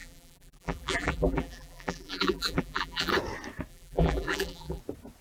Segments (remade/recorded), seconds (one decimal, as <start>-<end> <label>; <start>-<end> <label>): 0.0-3.1 remade; 3.1-3.7 recorded; 3.7-4.8 remade; 4.8-5.2 recorded

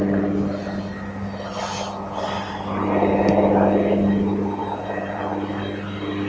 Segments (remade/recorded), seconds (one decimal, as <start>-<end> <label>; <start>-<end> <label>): 0.0-4.6 recorded; 4.6-5.2 remade; 5.2-6.3 recorded

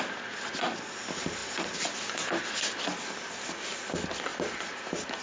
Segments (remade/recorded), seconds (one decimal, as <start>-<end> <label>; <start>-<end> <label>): 0.0-5.2 recorded

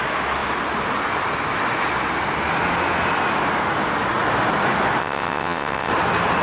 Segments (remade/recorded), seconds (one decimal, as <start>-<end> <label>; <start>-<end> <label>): 0.0-5.0 recorded; 5.0-5.9 remade; 5.9-6.4 recorded

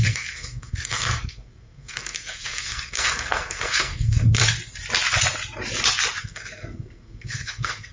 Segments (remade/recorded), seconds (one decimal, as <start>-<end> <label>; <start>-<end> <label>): 0.0-4.4 remade; 4.4-6.2 recorded; 6.2-7.9 remade